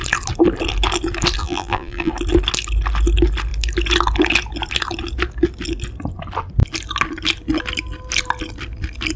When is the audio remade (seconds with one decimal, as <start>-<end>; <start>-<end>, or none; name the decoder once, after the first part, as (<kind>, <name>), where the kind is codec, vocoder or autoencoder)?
1.4-2.1 (vocoder, BigVGAN v2)